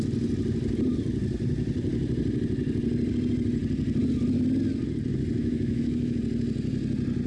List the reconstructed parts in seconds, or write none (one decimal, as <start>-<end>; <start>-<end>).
5.4-6.2